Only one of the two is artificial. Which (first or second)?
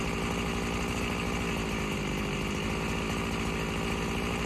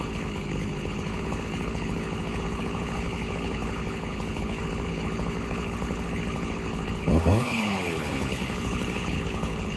second